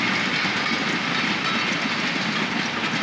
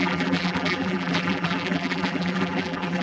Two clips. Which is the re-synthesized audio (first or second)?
second